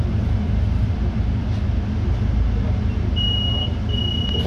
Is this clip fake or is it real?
real